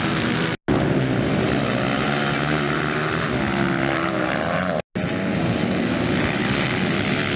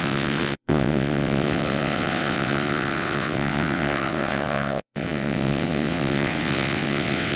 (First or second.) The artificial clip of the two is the second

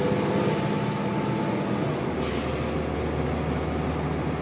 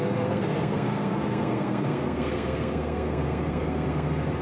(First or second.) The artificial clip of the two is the second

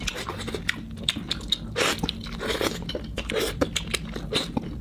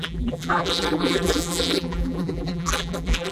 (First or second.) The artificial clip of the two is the second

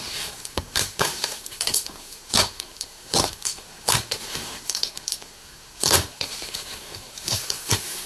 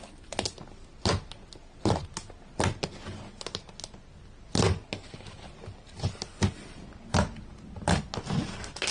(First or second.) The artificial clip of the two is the first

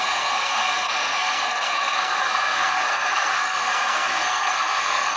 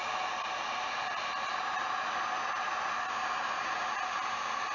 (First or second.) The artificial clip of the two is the first